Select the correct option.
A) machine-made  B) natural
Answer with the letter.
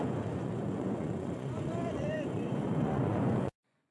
A